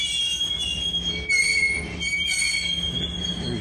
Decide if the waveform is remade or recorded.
recorded